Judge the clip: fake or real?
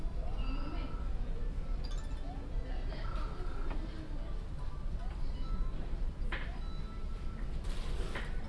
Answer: real